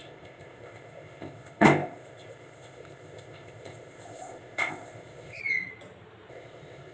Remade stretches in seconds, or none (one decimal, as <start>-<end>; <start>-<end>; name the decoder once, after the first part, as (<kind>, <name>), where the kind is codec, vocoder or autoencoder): 0.0-5.4 (codec, ZipCodec); 6.3-6.9